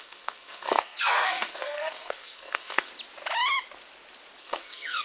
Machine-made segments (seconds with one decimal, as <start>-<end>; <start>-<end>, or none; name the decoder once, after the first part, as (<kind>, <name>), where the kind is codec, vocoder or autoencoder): 0.0-2.9 (codec, SNAC); 4.4-5.0